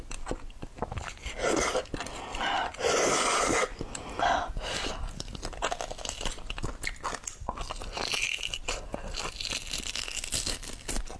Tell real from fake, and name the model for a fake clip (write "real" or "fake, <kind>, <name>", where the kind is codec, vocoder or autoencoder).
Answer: real